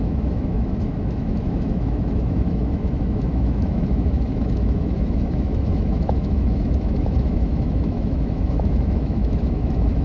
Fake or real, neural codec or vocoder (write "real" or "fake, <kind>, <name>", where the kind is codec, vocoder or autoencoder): fake, autoencoder, DAC-VAE